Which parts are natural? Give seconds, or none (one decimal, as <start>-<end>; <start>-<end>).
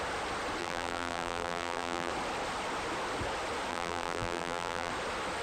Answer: 0.0-0.6; 2.1-3.7; 4.9-5.4